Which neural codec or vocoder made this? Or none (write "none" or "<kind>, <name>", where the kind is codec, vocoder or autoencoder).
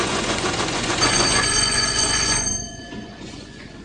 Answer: vocoder, Vocos